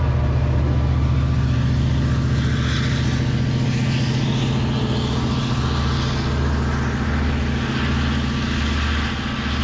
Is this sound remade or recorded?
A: recorded